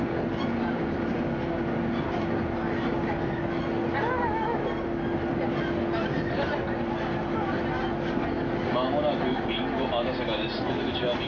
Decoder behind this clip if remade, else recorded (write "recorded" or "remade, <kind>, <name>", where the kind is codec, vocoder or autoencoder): recorded